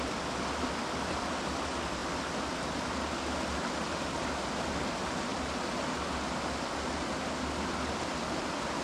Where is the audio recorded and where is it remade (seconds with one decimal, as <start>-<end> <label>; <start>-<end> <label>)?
0.0-8.8 recorded